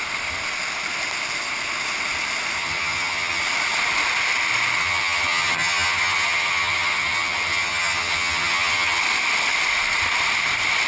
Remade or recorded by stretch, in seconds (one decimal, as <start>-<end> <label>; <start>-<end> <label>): 0.0-2.6 recorded; 2.6-3.4 remade; 3.4-4.8 recorded; 4.8-9.0 remade; 9.0-10.9 recorded